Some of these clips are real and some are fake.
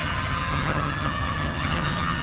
fake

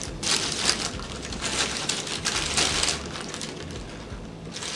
real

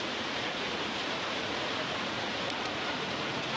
fake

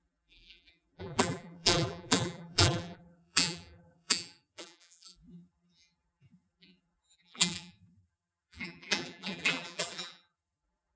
fake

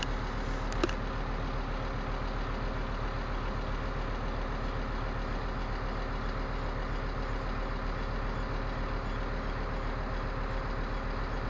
real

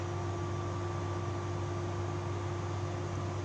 real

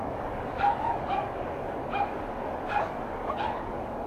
fake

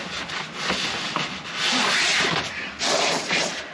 real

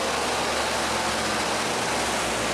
real